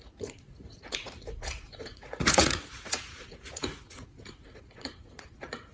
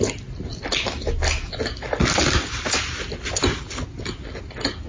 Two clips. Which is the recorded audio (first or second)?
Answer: second